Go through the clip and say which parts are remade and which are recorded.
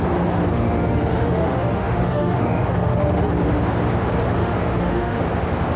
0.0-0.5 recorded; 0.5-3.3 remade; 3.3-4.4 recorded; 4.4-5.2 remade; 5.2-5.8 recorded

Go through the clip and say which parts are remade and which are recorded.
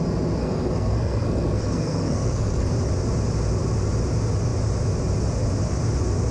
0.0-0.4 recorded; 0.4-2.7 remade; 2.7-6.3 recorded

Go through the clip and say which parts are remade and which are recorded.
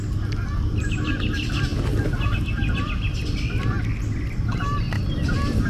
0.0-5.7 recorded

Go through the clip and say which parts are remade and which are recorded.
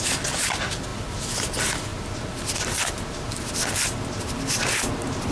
0.0-5.3 recorded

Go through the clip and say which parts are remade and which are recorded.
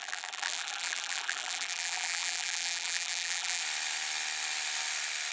0.0-3.6 remade; 3.6-5.3 recorded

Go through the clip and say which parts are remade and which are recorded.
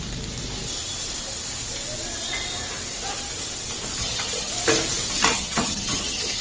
0.0-4.0 recorded; 4.0-4.5 remade; 4.5-5.3 recorded; 5.3-6.4 remade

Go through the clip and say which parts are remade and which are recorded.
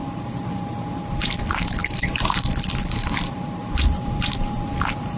0.0-5.2 remade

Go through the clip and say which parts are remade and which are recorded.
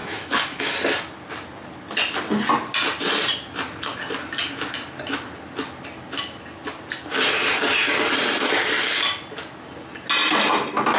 0.0-0.7 remade; 0.7-11.0 recorded